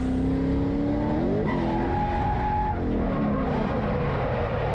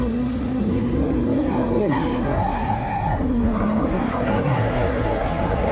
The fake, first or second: second